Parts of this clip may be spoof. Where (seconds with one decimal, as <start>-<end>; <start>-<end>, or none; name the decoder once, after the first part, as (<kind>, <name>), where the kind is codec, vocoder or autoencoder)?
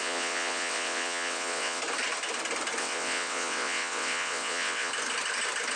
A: 0.0-1.8 (vocoder, WaveNeXt); 2.8-4.9